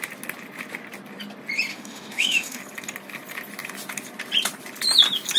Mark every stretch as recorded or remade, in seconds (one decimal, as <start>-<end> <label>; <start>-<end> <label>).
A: 0.0-1.7 recorded; 1.7-2.6 remade; 2.6-5.4 recorded